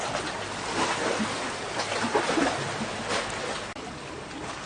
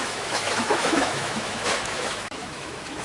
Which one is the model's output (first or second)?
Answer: second